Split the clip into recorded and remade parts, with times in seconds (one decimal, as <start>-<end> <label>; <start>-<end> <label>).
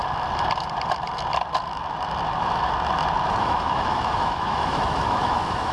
0.0-3.4 recorded; 3.4-5.7 remade